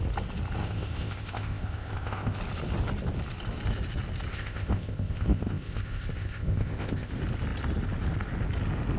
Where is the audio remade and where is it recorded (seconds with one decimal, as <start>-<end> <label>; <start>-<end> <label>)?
0.0-0.6 recorded; 0.6-2.4 remade; 2.4-4.3 recorded; 4.3-7.1 remade; 7.1-9.0 recorded